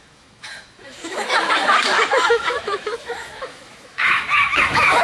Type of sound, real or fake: fake